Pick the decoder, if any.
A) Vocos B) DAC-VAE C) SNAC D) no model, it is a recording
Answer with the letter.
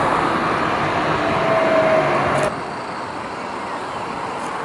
D